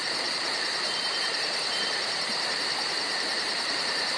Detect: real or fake fake